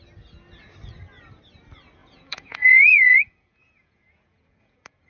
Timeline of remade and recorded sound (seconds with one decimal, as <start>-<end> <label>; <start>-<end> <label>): 0.0-2.0 recorded; 2.0-5.1 remade